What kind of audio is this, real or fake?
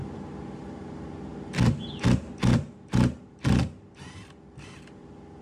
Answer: real